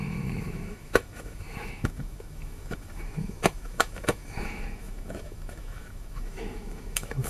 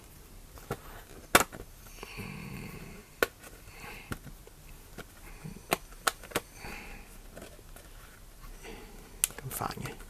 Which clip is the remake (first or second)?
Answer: first